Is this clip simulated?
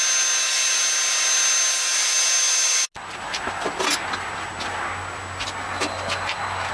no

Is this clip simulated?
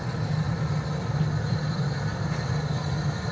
no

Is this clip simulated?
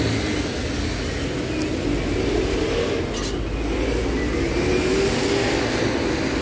no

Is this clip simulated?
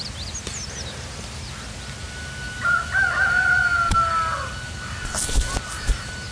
no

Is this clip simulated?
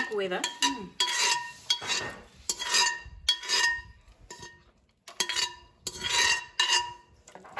no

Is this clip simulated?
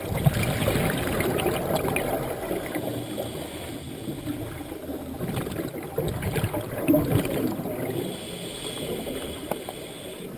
no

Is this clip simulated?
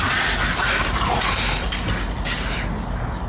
no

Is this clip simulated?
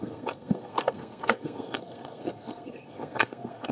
yes